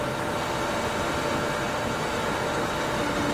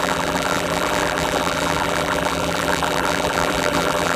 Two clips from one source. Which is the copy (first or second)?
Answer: second